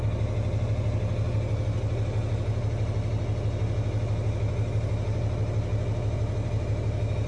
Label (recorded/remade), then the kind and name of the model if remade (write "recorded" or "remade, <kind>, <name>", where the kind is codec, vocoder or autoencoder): recorded